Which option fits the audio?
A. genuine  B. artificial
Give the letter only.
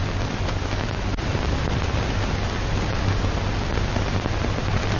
A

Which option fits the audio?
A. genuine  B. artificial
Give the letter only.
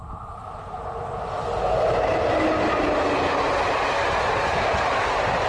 A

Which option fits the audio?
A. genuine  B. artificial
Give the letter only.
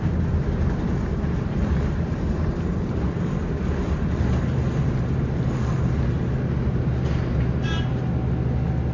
A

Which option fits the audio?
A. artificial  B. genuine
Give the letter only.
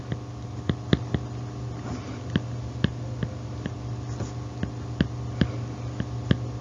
B